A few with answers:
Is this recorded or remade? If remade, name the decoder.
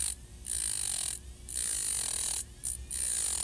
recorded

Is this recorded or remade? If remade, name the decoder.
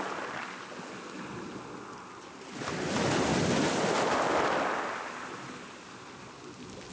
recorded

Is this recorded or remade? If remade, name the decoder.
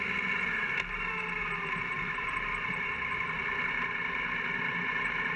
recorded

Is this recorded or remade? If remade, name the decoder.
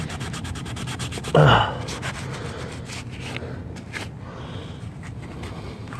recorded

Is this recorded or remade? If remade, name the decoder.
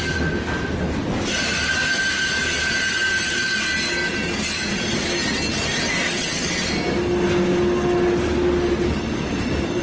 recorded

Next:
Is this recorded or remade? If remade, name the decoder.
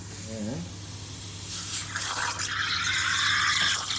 recorded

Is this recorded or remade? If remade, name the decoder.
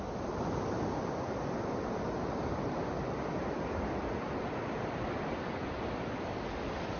recorded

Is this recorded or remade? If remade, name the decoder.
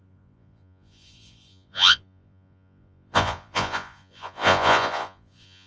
remade, vocoder, Vocos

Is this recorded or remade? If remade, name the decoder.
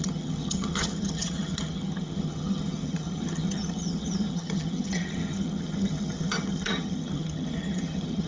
remade, vocoder, HiFi-GAN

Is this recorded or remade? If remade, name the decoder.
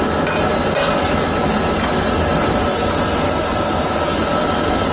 recorded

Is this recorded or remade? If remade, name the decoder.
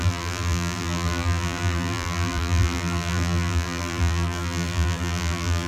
remade, vocoder, BigVGAN v2